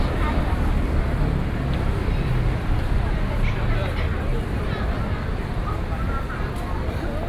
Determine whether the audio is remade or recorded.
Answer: remade